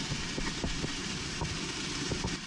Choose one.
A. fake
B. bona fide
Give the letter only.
B